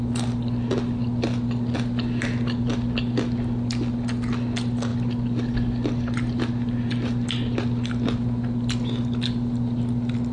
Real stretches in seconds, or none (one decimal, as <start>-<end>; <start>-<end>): 0.0-10.3